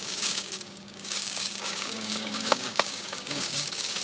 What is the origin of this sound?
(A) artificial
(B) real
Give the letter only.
A